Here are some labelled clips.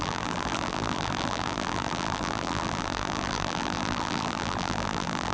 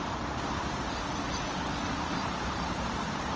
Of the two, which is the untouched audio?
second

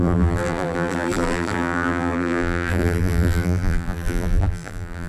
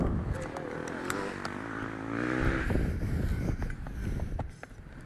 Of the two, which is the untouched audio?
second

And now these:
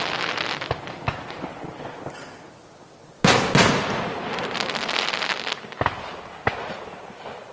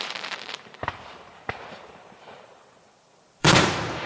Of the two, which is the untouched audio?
first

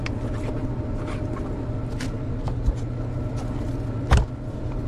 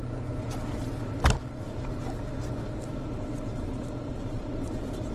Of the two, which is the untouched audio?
first